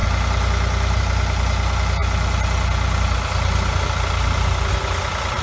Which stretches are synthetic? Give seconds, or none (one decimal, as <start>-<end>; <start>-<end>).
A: none